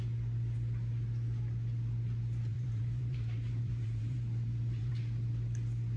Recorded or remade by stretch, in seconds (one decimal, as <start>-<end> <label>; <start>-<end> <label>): 0.0-2.5 recorded; 2.5-4.9 remade; 4.9-6.0 recorded